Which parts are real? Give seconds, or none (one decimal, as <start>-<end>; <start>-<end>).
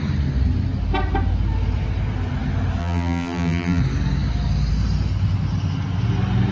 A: 0.0-2.8; 3.8-6.5